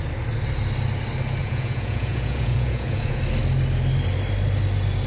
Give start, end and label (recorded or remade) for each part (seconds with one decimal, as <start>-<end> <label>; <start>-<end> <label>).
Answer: 0.0-1.4 recorded; 1.4-3.2 remade; 3.2-5.1 recorded